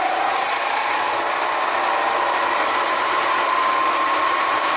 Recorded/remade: recorded